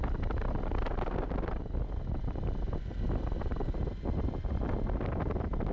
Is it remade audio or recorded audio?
recorded